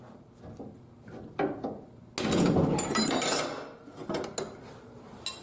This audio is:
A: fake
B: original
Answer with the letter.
B